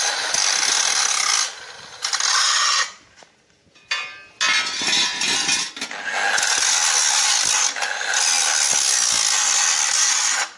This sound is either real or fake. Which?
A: real